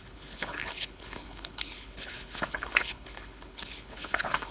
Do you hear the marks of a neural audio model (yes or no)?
yes